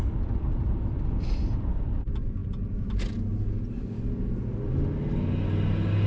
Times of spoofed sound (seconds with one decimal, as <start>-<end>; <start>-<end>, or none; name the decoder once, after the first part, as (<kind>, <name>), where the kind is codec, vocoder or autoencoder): none